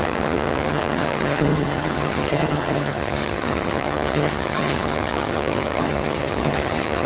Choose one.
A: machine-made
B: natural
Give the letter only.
A